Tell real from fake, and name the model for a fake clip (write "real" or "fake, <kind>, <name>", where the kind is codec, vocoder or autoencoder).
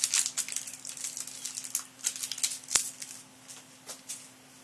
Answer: real